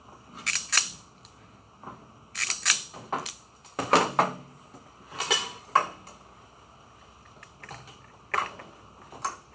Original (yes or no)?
yes